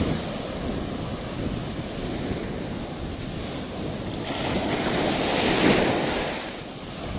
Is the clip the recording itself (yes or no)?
yes